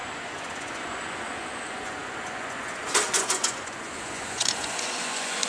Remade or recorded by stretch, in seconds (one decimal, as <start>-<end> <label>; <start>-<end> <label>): 0.0-5.5 remade